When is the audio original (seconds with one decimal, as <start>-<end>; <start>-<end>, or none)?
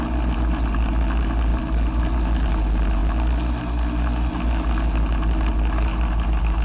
0.0-6.6